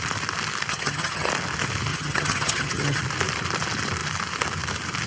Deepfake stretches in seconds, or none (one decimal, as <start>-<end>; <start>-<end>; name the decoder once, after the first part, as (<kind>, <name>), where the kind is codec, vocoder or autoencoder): 0.7-1.3 (vocoder, HiFi-GAN); 1.9-3.0